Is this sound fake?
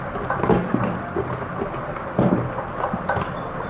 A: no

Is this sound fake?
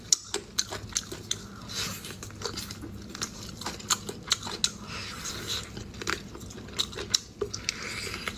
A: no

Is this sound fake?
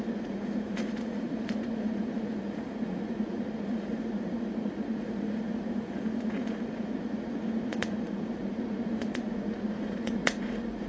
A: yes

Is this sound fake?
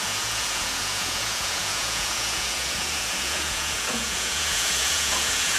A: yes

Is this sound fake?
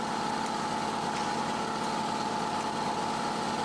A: no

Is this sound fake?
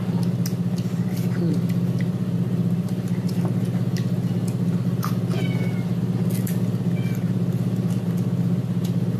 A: no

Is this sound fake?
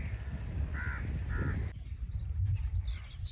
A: no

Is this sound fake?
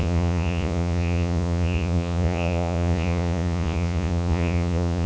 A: yes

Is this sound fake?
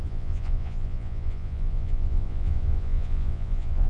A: yes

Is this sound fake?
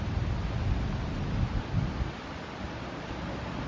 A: no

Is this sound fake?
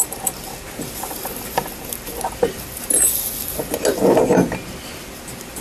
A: no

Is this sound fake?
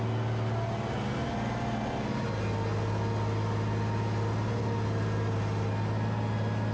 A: no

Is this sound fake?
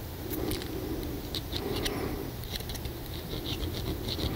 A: no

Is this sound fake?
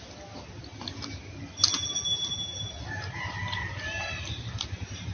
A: no